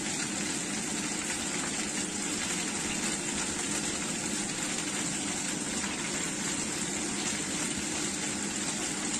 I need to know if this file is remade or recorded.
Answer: recorded